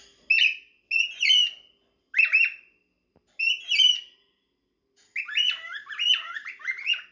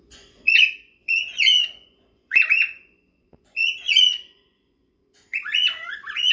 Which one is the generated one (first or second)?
second